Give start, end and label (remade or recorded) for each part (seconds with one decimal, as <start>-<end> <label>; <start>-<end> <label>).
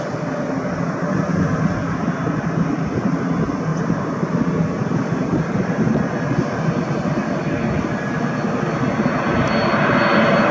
0.0-10.5 recorded